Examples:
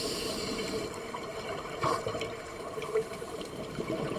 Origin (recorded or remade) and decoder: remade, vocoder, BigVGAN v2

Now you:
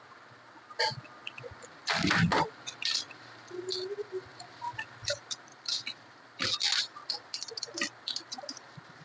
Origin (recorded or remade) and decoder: recorded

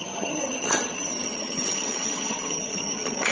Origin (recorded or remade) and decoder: remade, vocoder, HiFi-GAN